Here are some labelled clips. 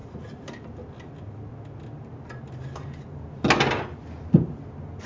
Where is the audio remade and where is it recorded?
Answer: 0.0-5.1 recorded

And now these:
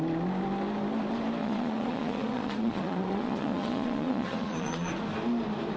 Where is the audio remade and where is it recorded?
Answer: 0.0-1.4 recorded; 1.4-4.9 remade; 4.9-5.8 recorded

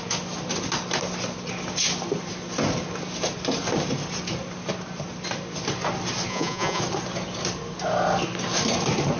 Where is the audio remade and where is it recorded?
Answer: 0.0-6.3 recorded; 6.3-6.8 remade; 6.8-9.2 recorded